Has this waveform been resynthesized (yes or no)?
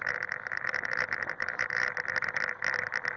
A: no